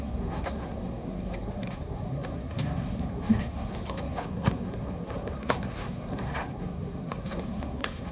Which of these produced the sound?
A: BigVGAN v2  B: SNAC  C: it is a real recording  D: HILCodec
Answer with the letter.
B